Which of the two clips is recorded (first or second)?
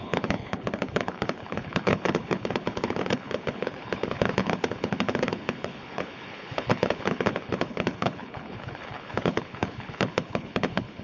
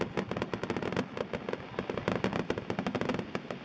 second